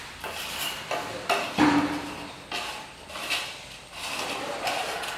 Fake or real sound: real